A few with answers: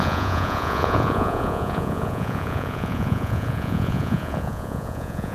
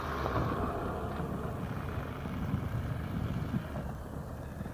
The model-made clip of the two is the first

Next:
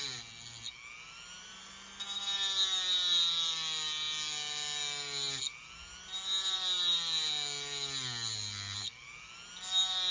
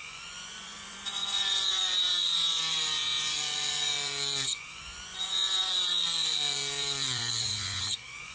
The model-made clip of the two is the second